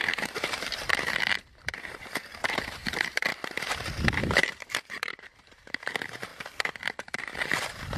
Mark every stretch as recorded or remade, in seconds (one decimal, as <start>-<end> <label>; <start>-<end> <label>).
0.0-3.3 remade; 3.3-4.2 recorded; 4.2-6.3 remade; 6.3-7.0 recorded; 7.0-8.0 remade